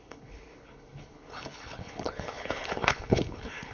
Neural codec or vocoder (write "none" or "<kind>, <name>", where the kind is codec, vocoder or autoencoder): codec, HILCodec